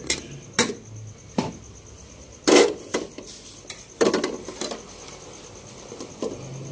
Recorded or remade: recorded